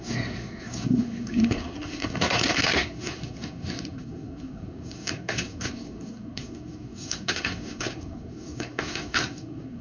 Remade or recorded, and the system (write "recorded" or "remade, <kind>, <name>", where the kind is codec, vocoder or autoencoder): remade, codec, SNAC